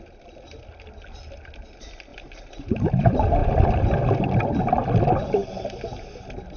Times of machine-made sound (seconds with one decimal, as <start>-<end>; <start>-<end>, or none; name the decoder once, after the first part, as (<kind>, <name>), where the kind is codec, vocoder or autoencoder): 2.1-2.7 (vocoder, BigVGAN v2)